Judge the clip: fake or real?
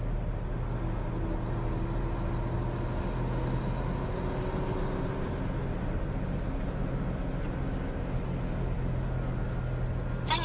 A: real